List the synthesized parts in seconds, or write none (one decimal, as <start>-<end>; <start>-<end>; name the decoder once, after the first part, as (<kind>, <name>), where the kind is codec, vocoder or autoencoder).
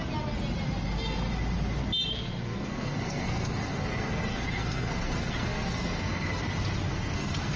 2.1-6.4 (codec, SNAC); 6.9-7.6